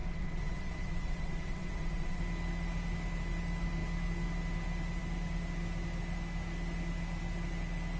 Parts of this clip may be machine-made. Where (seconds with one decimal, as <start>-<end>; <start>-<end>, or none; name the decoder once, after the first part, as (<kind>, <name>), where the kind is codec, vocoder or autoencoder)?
0.0-2.2 (vocoder, WaveNeXt)

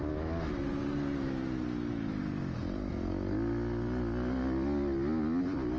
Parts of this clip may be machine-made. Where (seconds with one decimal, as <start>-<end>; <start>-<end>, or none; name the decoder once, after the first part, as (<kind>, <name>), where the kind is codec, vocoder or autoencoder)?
none

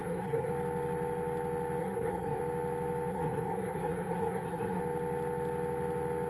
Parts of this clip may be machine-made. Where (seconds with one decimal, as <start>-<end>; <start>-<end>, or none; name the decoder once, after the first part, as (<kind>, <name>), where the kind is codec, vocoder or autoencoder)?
0.0-0.5 (codec, SNAC); 1.8-2.4; 3.1-4.8

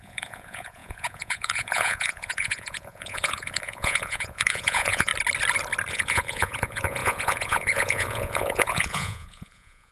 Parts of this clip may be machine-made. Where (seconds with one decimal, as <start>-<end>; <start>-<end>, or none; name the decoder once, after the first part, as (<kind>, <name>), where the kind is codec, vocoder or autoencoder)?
0.0-5.1 (vocoder, Vocos); 5.9-9.9

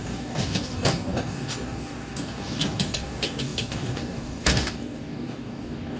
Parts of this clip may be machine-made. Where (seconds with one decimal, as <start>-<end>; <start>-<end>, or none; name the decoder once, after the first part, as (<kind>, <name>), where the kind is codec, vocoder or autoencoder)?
0.0-6.0 (codec, DAC)

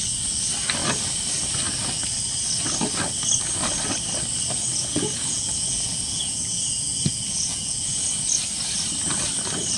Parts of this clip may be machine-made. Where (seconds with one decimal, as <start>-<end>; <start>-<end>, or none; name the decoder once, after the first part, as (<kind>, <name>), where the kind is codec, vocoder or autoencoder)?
4.7-8.1 (vocoder, Vocos)

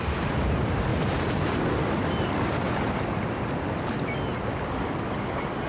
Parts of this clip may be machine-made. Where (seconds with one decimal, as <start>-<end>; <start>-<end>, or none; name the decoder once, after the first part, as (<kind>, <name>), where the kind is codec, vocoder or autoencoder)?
none

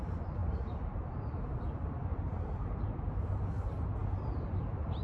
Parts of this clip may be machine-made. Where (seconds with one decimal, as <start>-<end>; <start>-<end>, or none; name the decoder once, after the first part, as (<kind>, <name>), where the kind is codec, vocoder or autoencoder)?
0.4-1.6 (vocoder, BigVGAN v2); 2.1-2.8